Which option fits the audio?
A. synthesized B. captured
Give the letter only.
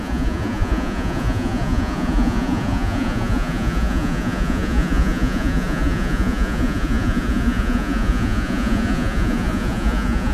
A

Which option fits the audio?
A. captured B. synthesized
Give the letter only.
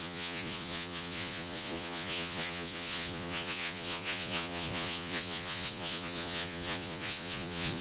B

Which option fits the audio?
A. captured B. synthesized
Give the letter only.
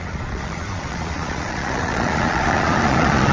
B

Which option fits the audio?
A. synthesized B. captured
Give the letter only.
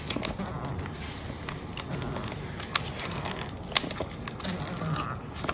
B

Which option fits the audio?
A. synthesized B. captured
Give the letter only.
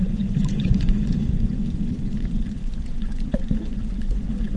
A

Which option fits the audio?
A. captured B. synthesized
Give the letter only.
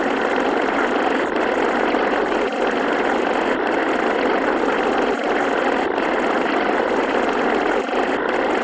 A